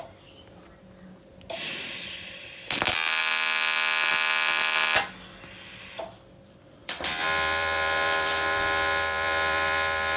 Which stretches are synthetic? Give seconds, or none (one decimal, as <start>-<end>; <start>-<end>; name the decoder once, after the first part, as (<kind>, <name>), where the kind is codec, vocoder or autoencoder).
6.8-10.2 (vocoder, BigVGAN v2)